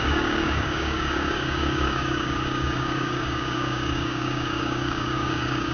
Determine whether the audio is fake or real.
fake